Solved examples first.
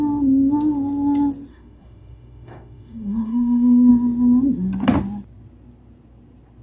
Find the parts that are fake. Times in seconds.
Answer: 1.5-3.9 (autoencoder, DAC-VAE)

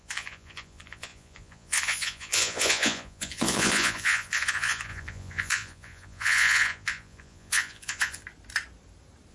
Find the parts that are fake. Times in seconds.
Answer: 0.0-8.2 (vocoder, Vocos)

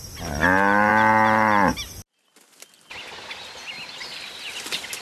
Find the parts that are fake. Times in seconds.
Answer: none

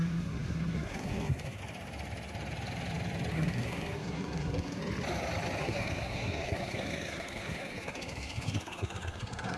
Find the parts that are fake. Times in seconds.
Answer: 0.0-1.6 (codec, SNAC); 3.3-4.8; 5.6-9.6

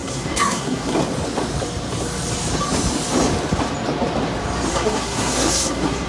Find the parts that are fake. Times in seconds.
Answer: 0.0-1.0 (codec, SNAC); 4.7-6.1